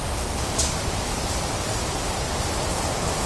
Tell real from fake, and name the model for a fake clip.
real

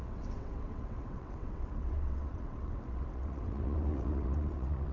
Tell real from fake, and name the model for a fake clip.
fake, vocoder, WaveNeXt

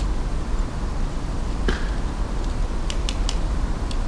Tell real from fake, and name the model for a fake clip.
real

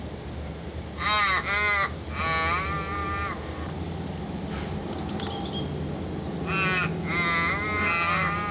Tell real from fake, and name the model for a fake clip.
real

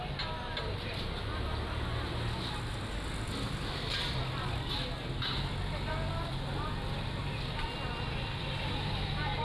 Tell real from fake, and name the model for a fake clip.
real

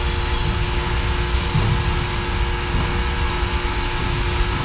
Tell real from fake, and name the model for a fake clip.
real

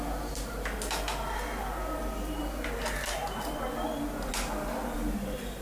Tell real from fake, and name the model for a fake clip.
real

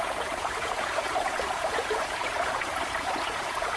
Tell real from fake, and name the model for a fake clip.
fake, vocoder, Vocos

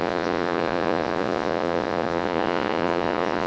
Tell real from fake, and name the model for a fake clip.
fake, vocoder, Vocos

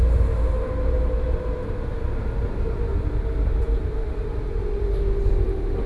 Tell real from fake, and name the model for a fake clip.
fake, vocoder, BigVGAN v2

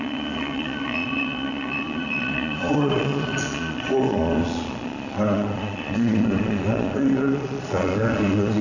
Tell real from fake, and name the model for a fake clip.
fake, vocoder, Vocos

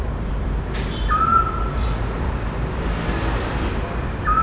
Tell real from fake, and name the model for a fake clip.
real